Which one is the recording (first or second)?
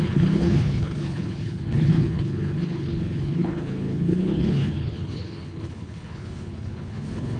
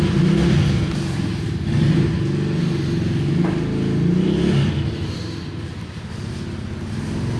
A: second